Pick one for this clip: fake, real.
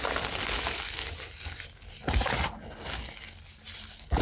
real